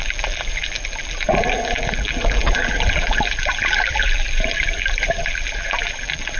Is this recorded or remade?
remade